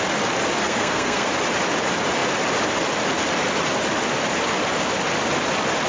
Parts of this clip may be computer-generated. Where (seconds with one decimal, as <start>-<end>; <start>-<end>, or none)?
0.6-1.3